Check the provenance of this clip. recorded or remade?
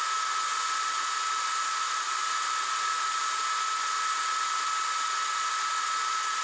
recorded